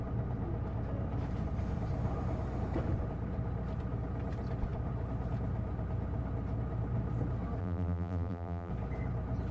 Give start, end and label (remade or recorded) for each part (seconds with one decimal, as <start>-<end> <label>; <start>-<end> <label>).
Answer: 0.0-7.6 recorded; 7.6-8.7 remade; 8.7-9.5 recorded